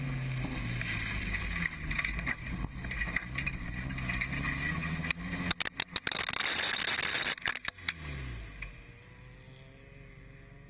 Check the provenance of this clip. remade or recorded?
recorded